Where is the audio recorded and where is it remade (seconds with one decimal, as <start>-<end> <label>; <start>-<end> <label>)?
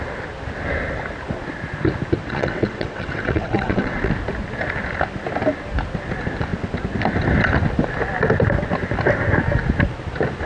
0.0-2.2 recorded; 2.2-4.1 remade; 4.1-10.5 recorded